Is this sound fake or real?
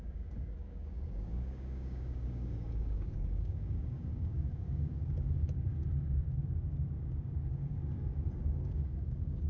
fake